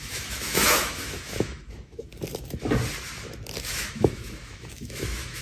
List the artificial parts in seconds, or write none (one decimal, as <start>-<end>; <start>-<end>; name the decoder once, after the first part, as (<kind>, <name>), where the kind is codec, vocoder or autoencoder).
0.0-2.1 (autoencoder, DAC-VAE); 3.7-5.4